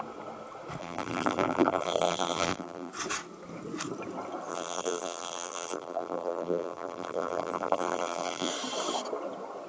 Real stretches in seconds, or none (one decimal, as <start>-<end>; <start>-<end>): 0.0-0.8; 2.9-4.5; 8.5-9.7